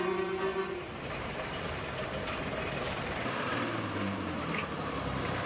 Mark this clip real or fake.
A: fake